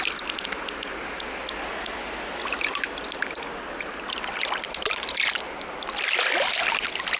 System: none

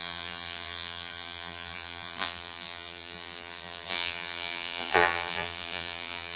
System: vocoder, BigVGAN v2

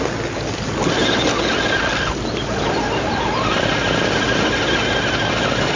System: none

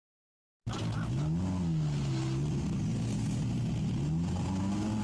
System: none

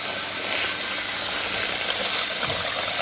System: none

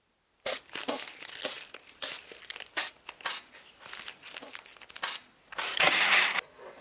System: none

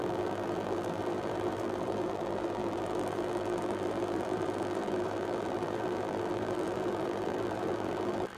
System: vocoder, BigVGAN v2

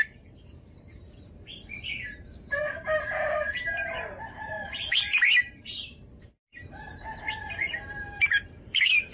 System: vocoder, BigVGAN v2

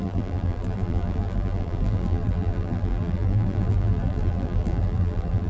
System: vocoder, BigVGAN v2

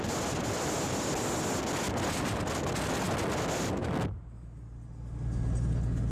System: none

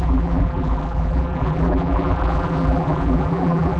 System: vocoder, BigVGAN v2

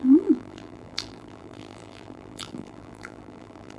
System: vocoder, BigVGAN v2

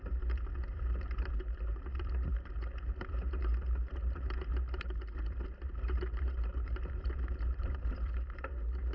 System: vocoder, BigVGAN v2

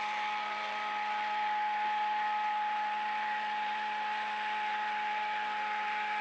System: vocoder, BigVGAN v2